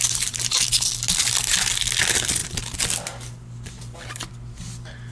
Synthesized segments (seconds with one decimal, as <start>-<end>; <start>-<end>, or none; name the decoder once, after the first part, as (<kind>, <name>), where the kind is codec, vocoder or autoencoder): none